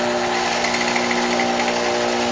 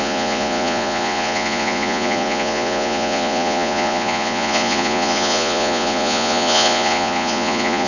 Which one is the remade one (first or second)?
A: second